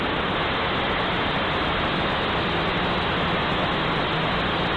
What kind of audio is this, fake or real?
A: real